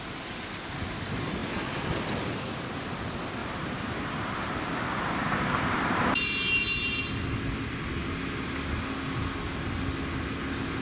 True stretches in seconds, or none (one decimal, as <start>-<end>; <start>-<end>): 0.0-3.4; 7.1-10.8